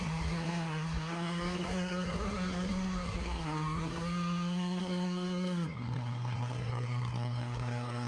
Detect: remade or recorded remade